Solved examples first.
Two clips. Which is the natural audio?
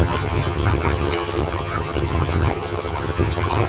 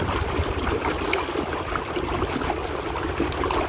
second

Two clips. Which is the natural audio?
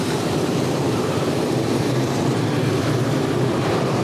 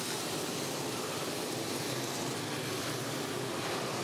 second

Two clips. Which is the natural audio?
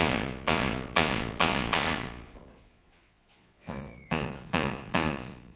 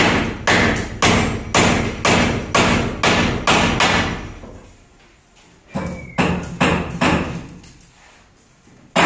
second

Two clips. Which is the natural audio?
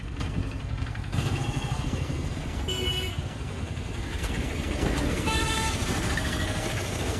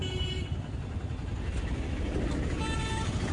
second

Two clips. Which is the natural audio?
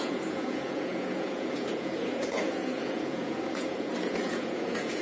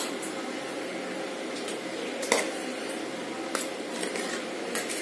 second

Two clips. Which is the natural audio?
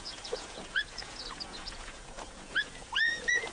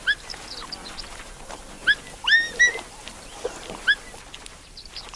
second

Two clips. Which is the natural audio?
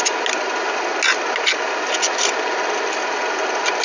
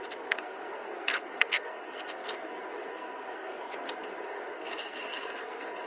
first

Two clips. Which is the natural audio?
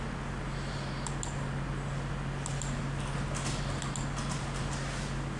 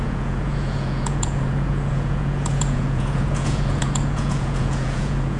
first